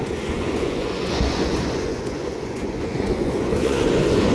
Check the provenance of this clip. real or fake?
fake